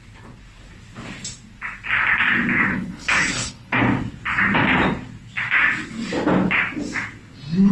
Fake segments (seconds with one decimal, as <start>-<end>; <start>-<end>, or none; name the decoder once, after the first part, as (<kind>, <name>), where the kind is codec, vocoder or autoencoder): 2.7-3.8 (codec, HILCodec)